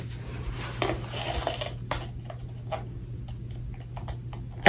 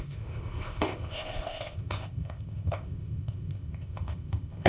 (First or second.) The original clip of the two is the first